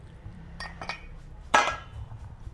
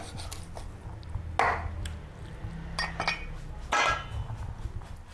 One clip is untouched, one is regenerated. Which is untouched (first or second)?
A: second